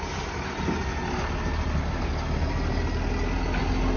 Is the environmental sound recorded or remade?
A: recorded